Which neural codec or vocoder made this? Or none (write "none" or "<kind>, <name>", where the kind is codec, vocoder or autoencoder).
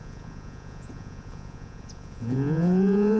vocoder, Vocos